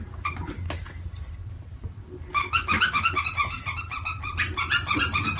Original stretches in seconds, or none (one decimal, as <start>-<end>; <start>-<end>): 0.0-5.4